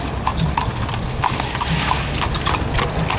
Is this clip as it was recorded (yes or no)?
yes